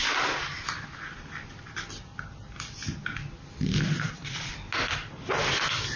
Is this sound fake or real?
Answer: real